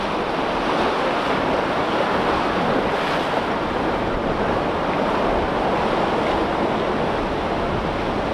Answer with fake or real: real